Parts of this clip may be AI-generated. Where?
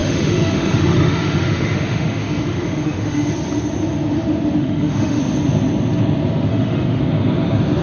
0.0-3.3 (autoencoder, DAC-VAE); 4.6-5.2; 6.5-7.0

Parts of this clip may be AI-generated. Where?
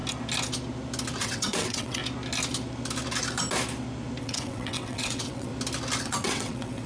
1.2-2.0 (vocoder, WaveNeXt); 4.2-5.5; 6.0-6.9